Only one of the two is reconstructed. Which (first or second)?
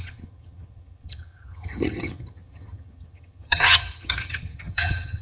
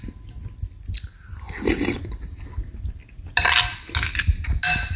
first